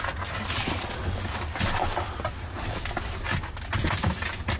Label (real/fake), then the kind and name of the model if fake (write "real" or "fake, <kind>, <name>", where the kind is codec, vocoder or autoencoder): real